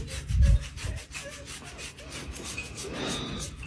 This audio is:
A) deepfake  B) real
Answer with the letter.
B